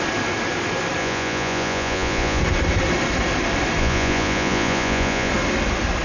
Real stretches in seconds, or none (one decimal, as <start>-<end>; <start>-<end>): 0.0-1.0; 2.4-3.8; 5.3-6.0